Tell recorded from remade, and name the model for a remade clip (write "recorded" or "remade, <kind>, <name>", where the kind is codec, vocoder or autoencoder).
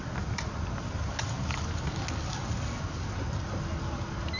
recorded